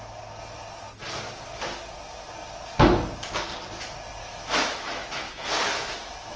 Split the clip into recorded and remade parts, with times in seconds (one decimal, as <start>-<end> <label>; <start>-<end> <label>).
0.0-4.2 recorded; 4.2-6.4 remade